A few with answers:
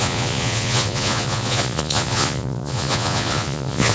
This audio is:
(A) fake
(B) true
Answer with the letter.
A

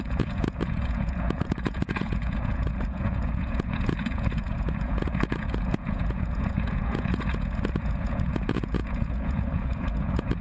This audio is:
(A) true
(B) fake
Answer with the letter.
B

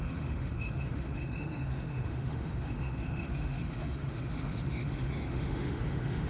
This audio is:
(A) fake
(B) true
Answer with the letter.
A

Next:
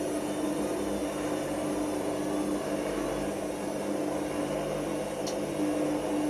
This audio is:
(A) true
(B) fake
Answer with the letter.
A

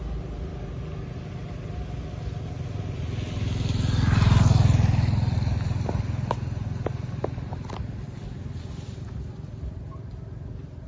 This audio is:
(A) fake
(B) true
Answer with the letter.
B